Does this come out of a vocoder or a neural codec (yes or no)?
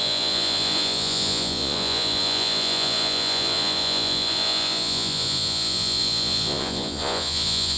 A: yes